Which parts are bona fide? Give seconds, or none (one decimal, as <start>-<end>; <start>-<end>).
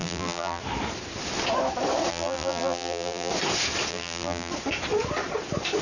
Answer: 0.6-2.1; 3.3-3.9; 4.5-5.8